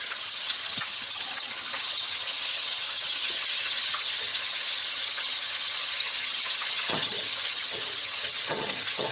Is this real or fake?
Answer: fake